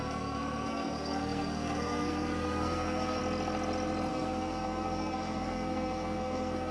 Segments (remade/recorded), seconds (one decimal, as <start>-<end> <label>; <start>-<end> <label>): 0.0-3.2 remade; 3.2-4.1 recorded; 4.1-6.7 remade